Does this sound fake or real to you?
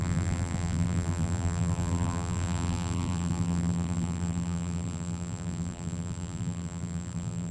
fake